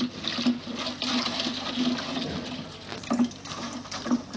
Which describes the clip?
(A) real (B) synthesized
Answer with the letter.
A